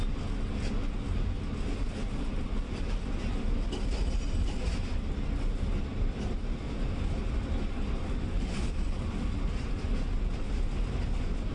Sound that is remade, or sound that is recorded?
recorded